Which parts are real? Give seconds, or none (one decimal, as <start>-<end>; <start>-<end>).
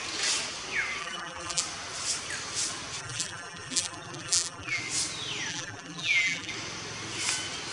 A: 0.0-1.0; 1.6-3.0; 4.8-5.5; 6.5-7.7